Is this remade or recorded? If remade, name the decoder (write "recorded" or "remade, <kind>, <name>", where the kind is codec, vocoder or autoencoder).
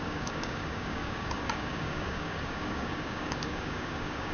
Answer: remade, codec, DAC